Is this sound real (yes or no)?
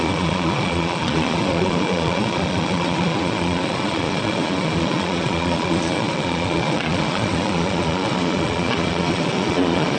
no